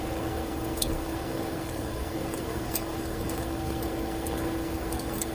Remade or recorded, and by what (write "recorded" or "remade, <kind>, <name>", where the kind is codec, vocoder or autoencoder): remade, codec, SNAC